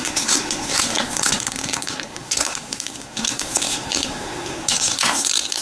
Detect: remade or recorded remade